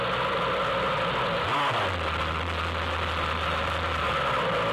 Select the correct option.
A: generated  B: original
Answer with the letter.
B